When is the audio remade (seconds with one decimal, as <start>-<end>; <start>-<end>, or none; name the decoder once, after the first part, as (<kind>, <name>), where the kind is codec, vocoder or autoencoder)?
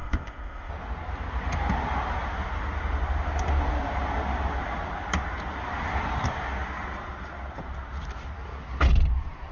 0.0-0.7 (codec, ZipCodec)